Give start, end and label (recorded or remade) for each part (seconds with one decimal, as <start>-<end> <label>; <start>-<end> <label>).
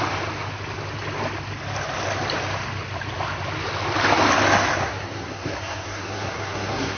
0.0-4.8 recorded; 4.8-7.0 remade